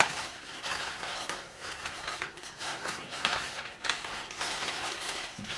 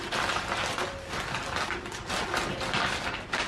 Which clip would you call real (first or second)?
second